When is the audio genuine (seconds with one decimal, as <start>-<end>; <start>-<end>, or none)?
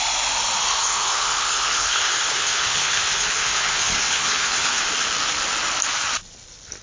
0.0-0.8; 4.9-6.8